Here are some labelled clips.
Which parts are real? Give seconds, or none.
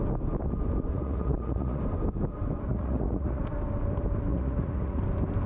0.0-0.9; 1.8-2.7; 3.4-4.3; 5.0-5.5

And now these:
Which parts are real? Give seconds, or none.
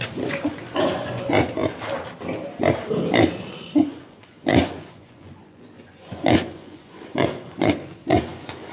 1.6-3.5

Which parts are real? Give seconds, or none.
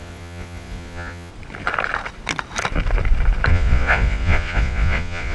1.3-3.5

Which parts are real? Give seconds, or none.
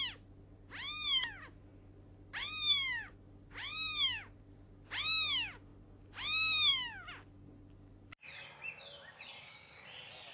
0.0-10.3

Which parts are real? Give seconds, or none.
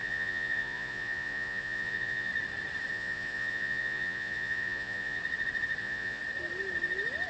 2.3-2.9; 5.2-5.8; 6.2-7.3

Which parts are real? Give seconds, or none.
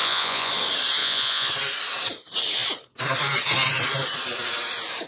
0.5-1.0; 1.5-5.1